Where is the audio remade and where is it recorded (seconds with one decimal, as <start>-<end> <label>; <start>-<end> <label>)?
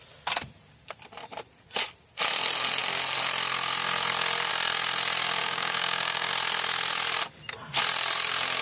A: 0.0-5.4 recorded; 5.4-6.3 remade; 6.3-8.6 recorded